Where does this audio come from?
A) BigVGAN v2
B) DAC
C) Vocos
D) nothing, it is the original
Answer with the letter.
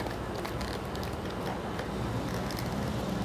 D